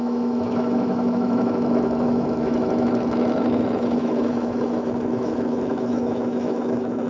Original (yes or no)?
no